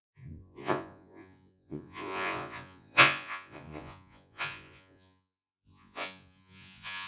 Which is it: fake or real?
fake